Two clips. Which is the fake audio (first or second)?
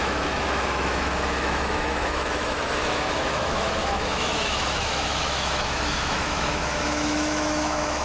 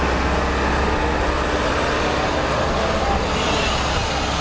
first